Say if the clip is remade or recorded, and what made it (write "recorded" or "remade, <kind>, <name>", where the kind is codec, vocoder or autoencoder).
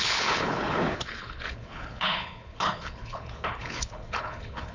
remade, codec, HILCodec